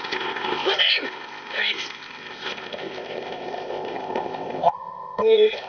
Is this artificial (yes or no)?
yes